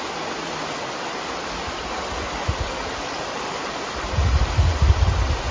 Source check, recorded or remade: recorded